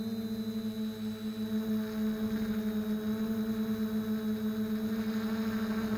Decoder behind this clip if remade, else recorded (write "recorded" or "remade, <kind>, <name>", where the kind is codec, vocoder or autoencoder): recorded